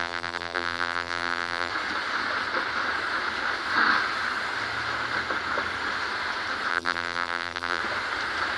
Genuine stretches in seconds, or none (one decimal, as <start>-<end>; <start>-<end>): 1.7-6.7; 7.8-8.6